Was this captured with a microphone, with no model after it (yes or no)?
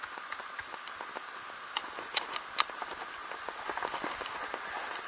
yes